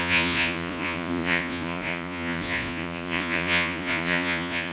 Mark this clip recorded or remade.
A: remade